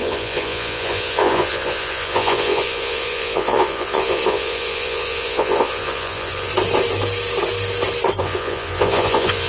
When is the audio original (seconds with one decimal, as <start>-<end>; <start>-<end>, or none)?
6.5-8.2